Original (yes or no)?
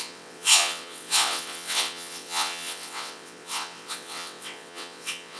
no